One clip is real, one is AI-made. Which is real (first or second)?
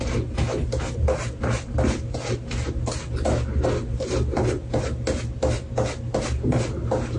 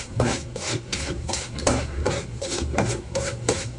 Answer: first